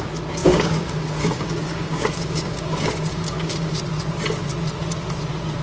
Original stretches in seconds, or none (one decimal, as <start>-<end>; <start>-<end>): 0.0-0.4; 3.8-5.6